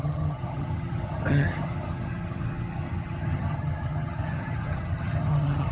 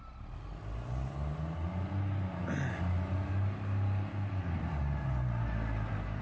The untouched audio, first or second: second